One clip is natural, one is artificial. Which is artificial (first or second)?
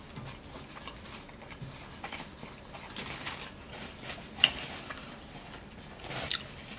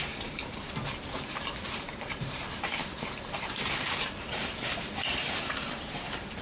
second